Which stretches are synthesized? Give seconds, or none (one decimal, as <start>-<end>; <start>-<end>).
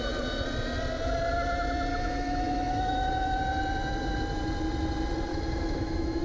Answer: 1.9-3.4; 5.3-6.2